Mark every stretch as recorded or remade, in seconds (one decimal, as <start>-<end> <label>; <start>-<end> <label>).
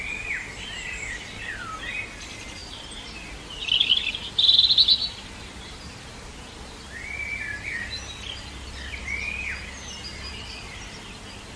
0.0-2.6 recorded; 2.6-3.6 remade; 3.6-11.6 recorded